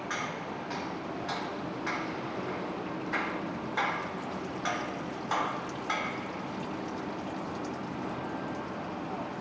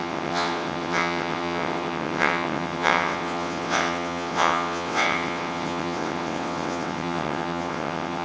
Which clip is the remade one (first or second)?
second